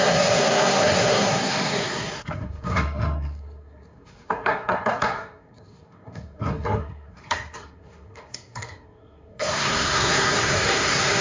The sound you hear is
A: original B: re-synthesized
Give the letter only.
B